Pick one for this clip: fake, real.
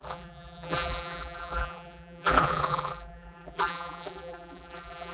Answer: fake